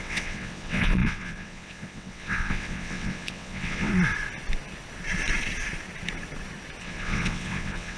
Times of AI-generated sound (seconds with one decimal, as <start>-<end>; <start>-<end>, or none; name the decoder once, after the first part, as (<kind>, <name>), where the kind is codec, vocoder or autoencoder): 0.0-3.9 (vocoder, WaveNeXt); 6.8-8.0